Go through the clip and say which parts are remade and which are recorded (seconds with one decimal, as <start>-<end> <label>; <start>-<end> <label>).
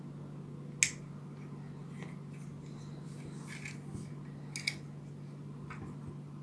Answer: 0.0-6.4 recorded